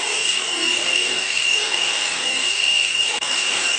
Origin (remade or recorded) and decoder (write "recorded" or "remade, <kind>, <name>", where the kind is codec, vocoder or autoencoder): remade, codec, DAC